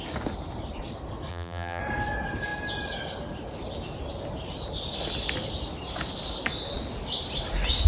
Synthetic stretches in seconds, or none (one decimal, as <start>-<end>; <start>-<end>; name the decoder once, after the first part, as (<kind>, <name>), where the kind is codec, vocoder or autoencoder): 1.3-1.8 (vocoder, BigVGAN v2)